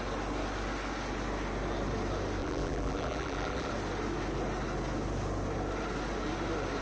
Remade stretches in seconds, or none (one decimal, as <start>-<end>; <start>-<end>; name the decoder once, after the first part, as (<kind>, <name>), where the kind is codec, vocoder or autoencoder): 2.4-3.7 (vocoder, BigVGAN v2)